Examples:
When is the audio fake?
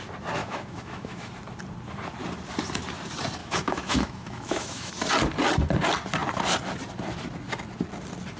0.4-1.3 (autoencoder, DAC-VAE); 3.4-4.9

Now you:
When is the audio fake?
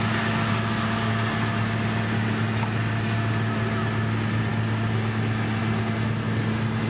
none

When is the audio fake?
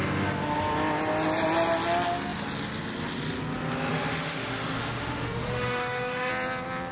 3.9-6.3 (autoencoder, DAC-VAE)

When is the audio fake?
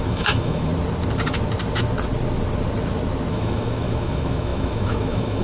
0.0-0.7 (autoencoder, DAC-VAE); 3.3-5.4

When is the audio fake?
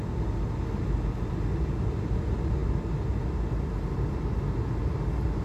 none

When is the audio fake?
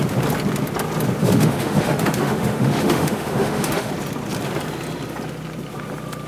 1.2-3.9 (autoencoder, DAC-VAE)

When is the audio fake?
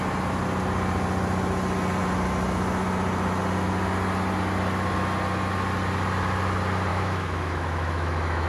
6.9-8.5 (autoencoder, DAC-VAE)